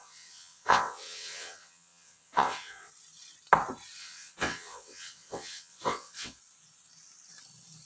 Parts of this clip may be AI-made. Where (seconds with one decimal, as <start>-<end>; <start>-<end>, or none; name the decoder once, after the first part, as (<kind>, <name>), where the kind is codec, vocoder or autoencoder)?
0.0-2.9 (vocoder, WaveNeXt); 4.0-6.4